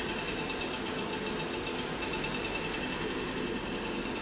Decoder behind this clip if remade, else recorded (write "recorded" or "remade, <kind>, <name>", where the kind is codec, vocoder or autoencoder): recorded